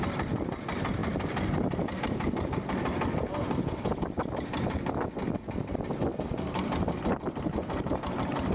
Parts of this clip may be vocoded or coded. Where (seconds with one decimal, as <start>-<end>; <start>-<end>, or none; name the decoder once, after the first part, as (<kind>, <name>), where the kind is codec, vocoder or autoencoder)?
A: none